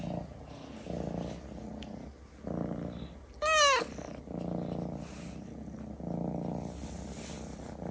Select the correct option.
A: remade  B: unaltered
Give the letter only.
B